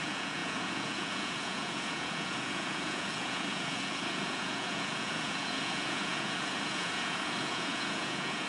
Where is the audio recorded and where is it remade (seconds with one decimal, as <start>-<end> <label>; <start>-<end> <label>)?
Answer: 0.0-8.5 remade